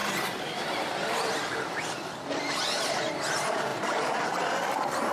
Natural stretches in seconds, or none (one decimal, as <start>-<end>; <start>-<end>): 3.1-3.7; 4.4-5.1